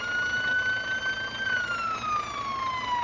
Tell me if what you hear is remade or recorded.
recorded